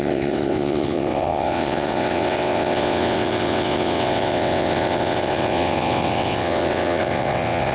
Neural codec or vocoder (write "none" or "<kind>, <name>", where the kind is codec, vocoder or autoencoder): vocoder, WaveNeXt